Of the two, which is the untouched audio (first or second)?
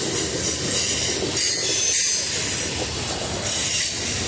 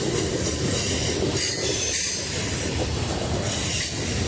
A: first